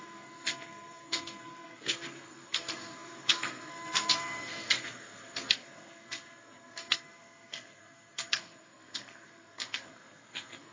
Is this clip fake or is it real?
fake